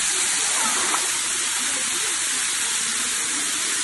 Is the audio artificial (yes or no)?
no